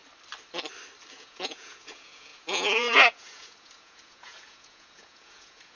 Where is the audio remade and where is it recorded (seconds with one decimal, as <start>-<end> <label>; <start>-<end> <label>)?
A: 0.0-1.1 recorded; 1.1-5.8 remade